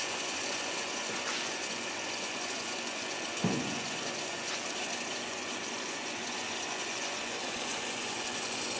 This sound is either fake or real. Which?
fake